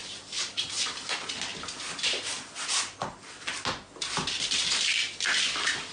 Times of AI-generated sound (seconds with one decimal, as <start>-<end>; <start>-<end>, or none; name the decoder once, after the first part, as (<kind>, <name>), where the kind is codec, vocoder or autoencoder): none